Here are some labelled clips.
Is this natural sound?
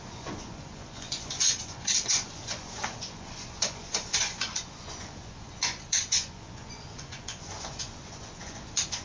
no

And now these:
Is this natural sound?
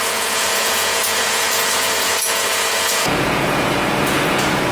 no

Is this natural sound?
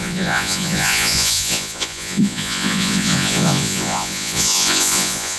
no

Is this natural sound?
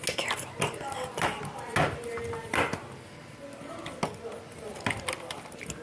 yes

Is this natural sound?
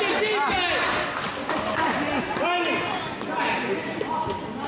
yes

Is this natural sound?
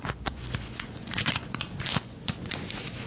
no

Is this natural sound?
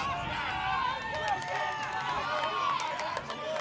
yes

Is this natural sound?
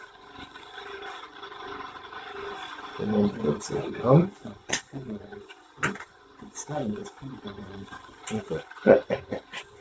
no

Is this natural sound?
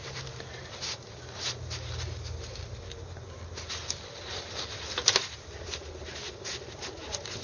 yes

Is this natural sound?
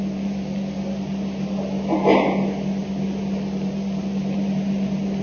yes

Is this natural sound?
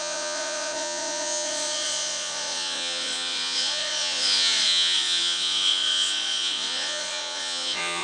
no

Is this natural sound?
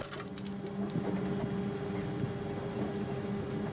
yes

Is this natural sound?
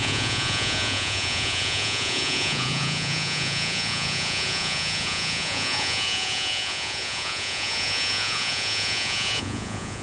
no